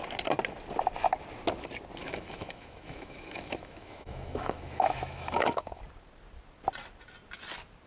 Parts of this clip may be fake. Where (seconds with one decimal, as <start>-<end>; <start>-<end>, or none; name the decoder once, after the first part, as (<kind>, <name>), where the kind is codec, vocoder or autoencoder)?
2.0-5.8 (autoencoder, DAC-VAE)